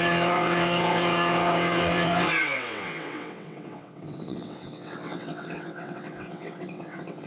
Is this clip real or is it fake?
fake